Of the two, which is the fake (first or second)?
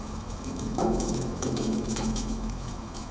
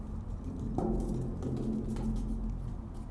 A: first